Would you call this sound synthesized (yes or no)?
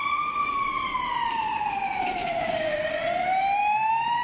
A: yes